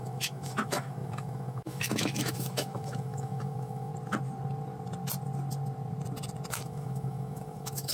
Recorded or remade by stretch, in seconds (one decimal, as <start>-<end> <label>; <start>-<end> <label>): 0.0-3.9 remade; 3.9-6.5 recorded; 6.5-7.9 remade